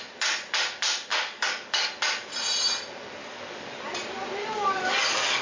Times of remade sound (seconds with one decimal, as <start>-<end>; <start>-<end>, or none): 1.1-1.9; 3.2-3.8; 4.4-5.4